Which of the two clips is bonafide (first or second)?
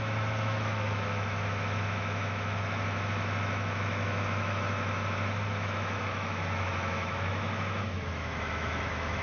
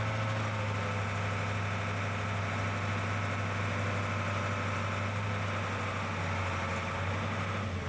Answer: second